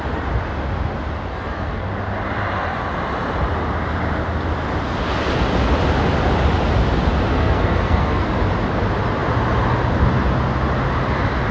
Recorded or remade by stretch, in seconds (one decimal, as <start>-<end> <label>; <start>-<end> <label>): 0.0-1.3 recorded; 1.3-1.9 remade; 1.9-7.3 recorded; 7.3-8.3 remade; 8.3-11.5 recorded